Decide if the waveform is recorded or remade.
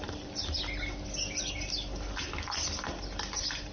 recorded